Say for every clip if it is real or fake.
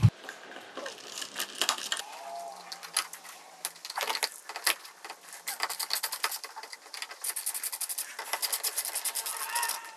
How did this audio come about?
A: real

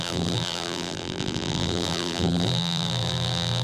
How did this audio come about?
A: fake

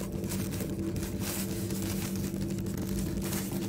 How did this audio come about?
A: real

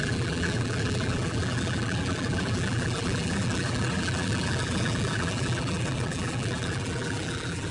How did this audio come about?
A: fake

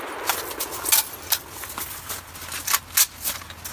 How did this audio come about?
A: real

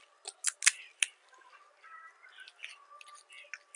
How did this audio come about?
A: real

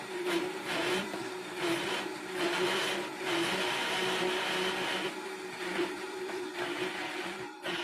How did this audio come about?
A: fake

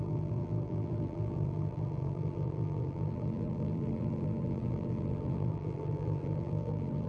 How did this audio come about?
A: fake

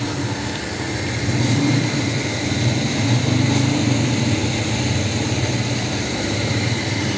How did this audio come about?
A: fake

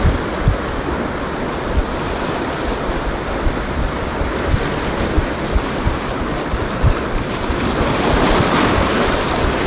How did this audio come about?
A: real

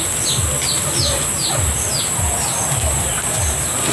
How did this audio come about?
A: real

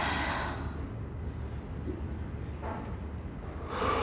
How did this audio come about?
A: real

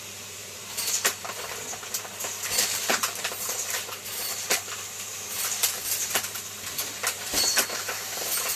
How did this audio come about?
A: fake